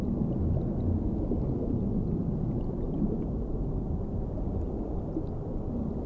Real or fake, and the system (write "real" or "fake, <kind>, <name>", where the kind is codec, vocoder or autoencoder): real